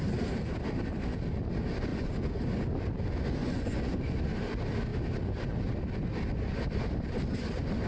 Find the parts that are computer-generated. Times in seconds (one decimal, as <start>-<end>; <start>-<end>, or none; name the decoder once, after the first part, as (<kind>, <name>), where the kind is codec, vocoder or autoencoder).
1.9-2.4 (vocoder, Vocos); 3.4-4.0